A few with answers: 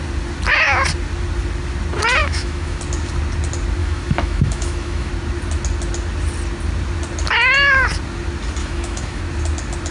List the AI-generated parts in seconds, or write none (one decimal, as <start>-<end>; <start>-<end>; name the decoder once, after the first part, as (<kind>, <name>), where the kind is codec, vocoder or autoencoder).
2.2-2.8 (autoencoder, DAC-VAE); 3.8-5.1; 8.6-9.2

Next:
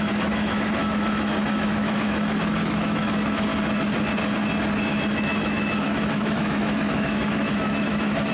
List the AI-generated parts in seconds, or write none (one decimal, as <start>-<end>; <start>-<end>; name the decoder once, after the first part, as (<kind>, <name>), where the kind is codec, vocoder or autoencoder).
0.0-3.5 (autoencoder, DAC-VAE); 4.8-8.3

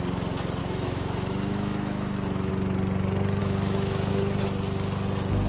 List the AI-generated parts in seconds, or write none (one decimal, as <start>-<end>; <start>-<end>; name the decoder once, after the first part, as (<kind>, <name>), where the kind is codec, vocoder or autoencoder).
0.6-2.5 (autoencoder, DAC-VAE); 3.4-4.1

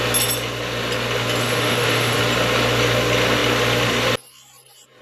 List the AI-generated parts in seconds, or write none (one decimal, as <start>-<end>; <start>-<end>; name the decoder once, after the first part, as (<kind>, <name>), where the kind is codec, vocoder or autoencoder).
1.4-2.2 (autoencoder, DAC-VAE)

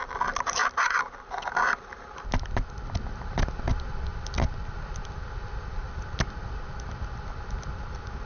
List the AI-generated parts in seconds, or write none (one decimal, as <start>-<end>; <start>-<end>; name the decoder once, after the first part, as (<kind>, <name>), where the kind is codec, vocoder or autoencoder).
none